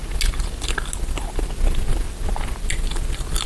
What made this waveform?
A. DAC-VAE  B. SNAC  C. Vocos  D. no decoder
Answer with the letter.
D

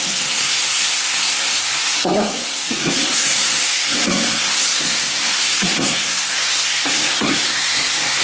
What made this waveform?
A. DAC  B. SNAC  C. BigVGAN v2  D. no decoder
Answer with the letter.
B